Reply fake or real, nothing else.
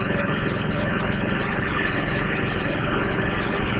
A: fake